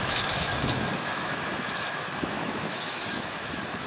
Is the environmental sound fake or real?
fake